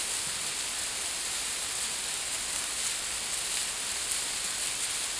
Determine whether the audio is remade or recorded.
recorded